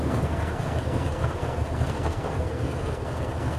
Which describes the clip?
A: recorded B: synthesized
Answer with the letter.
B